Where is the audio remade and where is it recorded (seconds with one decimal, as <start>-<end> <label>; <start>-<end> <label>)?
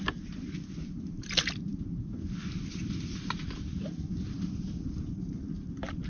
0.0-6.1 recorded